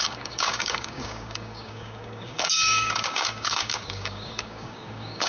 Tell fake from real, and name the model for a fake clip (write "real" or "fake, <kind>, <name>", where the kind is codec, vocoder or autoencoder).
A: fake, codec, DAC